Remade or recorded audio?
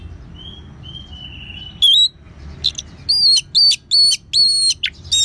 recorded